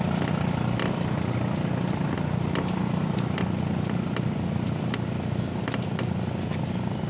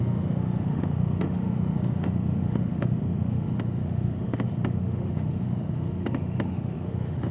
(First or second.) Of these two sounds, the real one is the first